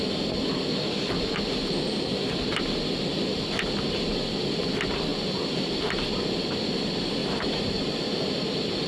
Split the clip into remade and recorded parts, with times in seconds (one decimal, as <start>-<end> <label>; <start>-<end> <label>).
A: 0.0-7.2 recorded; 7.2-8.0 remade; 8.0-8.9 recorded